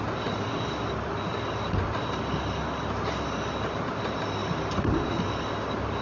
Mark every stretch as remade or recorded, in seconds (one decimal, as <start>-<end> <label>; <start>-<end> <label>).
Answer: 0.0-4.4 recorded; 4.4-5.2 remade; 5.2-6.0 recorded